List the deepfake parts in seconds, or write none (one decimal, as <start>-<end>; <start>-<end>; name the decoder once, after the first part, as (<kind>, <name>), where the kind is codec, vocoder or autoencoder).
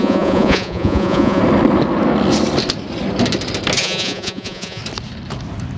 0.0-1.4 (vocoder, Vocos); 3.8-4.8